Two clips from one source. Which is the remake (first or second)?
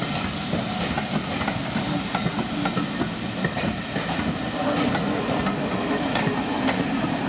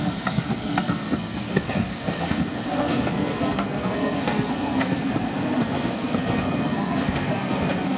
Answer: second